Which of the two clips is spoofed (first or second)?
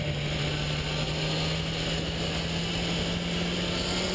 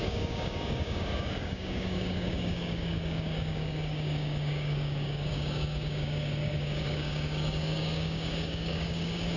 second